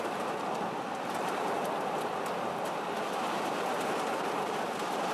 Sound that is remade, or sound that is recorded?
recorded